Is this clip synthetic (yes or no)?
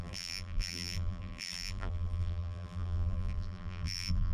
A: yes